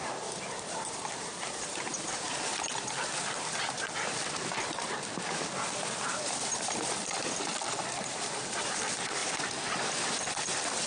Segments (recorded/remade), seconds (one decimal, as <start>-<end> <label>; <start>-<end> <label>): 0.0-10.9 remade